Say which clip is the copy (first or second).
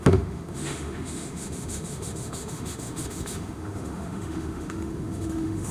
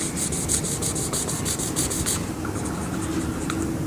first